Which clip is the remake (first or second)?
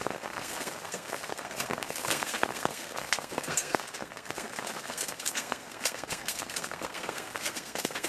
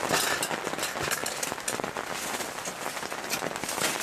first